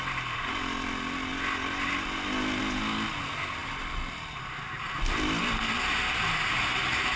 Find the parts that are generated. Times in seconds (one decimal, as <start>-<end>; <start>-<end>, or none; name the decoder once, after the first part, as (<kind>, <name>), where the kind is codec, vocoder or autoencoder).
none